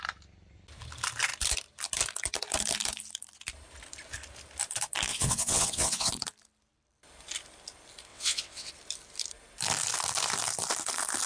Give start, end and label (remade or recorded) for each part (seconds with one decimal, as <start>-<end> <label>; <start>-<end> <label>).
0.0-5.1 recorded; 5.1-6.1 remade; 6.1-8.1 recorded; 8.1-8.7 remade; 8.7-11.3 recorded